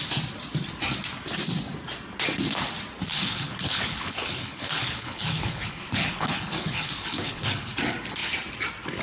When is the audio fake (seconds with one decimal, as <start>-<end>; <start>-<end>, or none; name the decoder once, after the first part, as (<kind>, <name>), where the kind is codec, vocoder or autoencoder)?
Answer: 3.1-7.7 (codec, HILCodec)